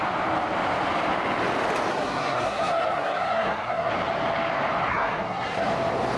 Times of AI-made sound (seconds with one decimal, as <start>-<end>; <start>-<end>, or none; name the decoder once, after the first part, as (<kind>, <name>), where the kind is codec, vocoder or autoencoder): 1.9-3.9 (codec, SNAC); 4.9-5.7